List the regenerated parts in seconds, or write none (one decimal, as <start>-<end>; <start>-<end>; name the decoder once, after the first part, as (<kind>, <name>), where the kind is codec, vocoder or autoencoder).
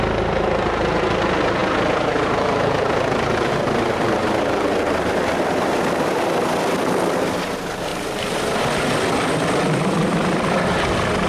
1.6-6.8 (vocoder, BigVGAN v2); 7.9-8.6